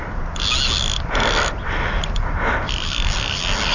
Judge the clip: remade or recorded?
recorded